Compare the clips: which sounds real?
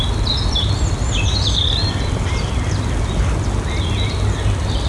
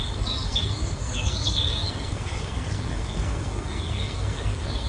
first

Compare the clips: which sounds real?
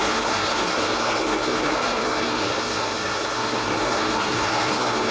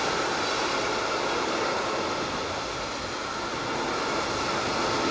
second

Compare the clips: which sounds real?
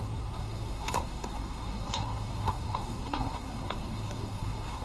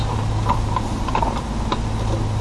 second